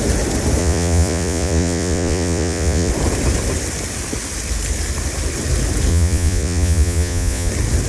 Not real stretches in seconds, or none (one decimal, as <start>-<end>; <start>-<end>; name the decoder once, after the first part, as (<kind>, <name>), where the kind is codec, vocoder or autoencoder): 0.6-2.9 (vocoder, Vocos); 5.9-7.5